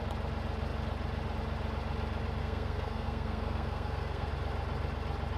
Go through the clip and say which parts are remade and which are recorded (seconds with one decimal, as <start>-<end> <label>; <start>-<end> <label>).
0.0-2.4 recorded; 2.4-4.3 remade; 4.3-5.4 recorded